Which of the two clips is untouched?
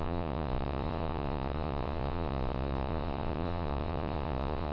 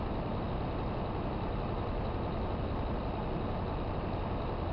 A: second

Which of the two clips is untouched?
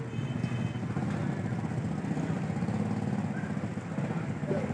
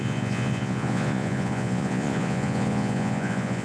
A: first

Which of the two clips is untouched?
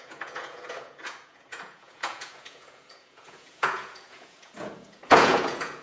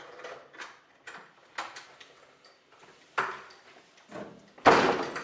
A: second